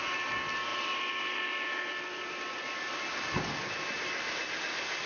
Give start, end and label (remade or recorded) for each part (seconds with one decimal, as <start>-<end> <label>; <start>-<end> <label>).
0.0-5.1 recorded